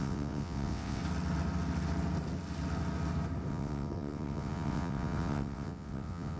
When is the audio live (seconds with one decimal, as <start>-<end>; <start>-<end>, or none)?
1.0-3.5